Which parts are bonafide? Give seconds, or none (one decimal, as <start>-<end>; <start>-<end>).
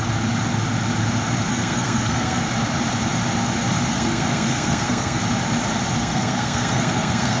0.0-1.5; 2.4-3.9; 5.2-6.0